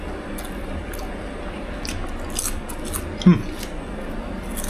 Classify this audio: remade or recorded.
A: recorded